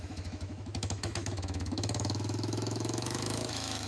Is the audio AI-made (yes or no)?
yes